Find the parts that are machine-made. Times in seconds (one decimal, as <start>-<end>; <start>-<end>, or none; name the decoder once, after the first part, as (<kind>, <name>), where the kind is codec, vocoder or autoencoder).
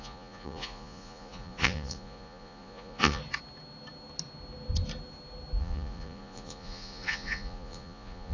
0.0-3.2 (vocoder, Vocos); 5.6-8.3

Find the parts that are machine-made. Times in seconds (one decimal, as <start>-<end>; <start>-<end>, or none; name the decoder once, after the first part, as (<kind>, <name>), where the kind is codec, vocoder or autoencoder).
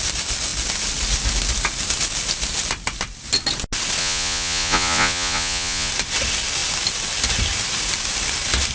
4.0-5.9 (vocoder, Vocos)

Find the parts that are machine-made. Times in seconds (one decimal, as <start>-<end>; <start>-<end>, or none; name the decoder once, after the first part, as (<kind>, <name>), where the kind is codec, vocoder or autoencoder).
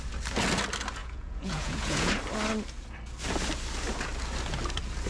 1.0-2.1 (vocoder, Vocos)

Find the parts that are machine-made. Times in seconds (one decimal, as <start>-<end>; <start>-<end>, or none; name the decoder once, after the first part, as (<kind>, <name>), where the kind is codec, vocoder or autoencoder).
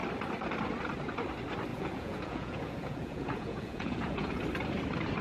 1.7-4.4 (vocoder, Vocos)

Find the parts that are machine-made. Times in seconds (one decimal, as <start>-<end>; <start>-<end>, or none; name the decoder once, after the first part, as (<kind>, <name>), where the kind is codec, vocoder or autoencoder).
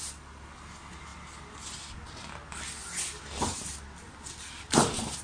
none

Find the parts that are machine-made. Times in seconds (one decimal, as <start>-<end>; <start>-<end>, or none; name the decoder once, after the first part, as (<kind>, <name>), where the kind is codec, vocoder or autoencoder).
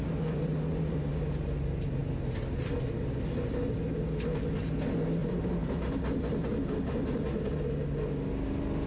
none